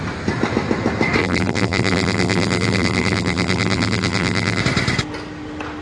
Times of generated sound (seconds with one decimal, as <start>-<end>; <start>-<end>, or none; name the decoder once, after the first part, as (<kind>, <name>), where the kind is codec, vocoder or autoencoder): 1.2-4.6 (vocoder, BigVGAN v2)